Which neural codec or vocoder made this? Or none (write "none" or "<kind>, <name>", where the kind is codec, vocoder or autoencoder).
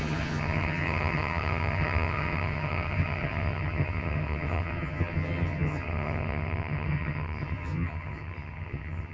vocoder, HiFi-GAN